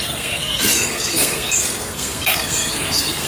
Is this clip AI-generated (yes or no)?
yes